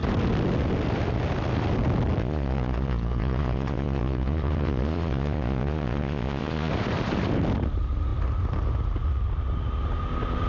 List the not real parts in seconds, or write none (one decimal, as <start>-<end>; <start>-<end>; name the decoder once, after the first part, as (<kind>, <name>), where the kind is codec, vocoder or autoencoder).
2.2-6.7 (vocoder, Vocos)